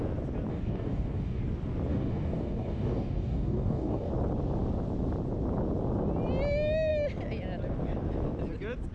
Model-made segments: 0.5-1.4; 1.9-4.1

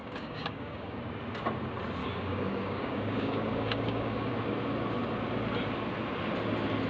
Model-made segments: 0.0-1.0; 2.0-4.3

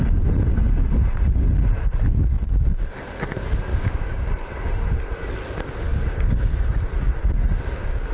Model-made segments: 3.7-4.3; 5.9-6.5

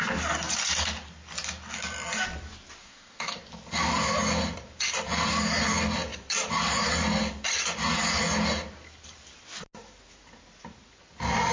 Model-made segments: 2.8-3.4

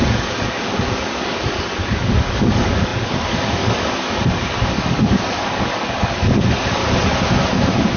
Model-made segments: 0.0-6.8

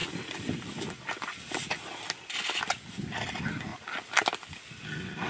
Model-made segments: none

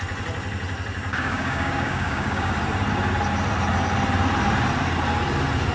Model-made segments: 1.1-2.5

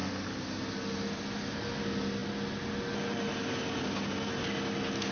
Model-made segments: none